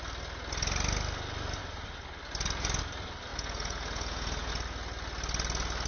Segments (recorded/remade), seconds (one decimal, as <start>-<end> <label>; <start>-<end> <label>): 0.0-3.3 recorded; 3.3-4.5 remade; 4.5-5.9 recorded